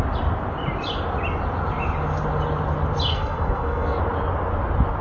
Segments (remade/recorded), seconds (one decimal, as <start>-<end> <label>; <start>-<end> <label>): 0.0-3.1 recorded; 3.1-4.0 remade; 4.0-5.0 recorded